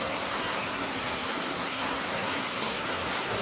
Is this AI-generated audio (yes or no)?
yes